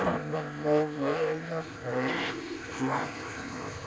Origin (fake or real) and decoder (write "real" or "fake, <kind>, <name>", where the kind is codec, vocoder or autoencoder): fake, codec, ZipCodec